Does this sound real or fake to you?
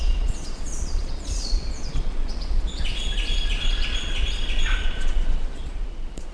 fake